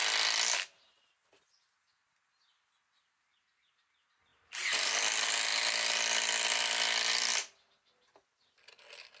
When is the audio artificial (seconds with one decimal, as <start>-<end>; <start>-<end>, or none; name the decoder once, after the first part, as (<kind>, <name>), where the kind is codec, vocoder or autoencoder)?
4.3-4.9 (vocoder, BigVGAN v2)